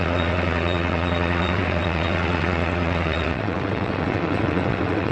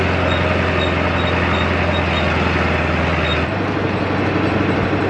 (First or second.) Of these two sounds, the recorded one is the second